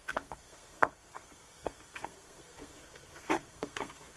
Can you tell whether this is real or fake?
fake